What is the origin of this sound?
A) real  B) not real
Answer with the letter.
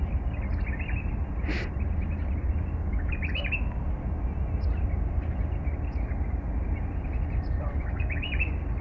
A